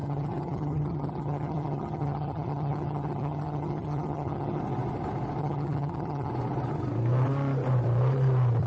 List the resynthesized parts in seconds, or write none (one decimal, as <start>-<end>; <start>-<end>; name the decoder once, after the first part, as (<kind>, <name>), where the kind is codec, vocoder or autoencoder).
0.0-4.6 (vocoder, HiFi-GAN); 5.4-6.3